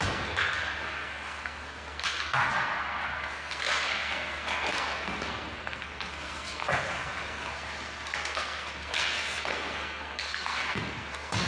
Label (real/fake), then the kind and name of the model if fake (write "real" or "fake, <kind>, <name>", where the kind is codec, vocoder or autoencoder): fake, codec, SNAC